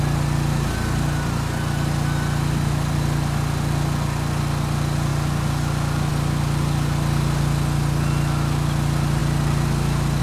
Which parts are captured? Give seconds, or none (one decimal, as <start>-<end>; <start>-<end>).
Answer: 0.0-10.2